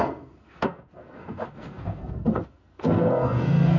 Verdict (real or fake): fake